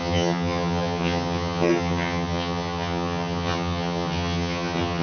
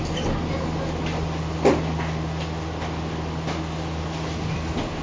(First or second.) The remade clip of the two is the first